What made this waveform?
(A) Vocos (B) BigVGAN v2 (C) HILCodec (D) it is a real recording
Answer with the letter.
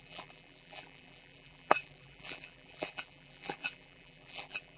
B